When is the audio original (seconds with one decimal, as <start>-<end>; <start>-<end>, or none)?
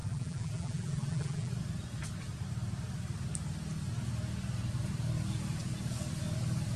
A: 1.5-6.8